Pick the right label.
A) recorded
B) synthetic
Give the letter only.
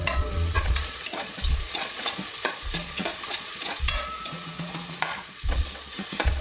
B